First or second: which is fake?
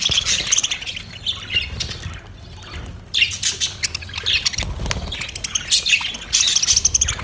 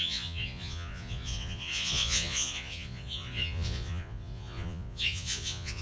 second